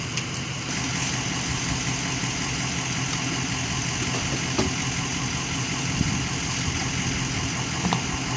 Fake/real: real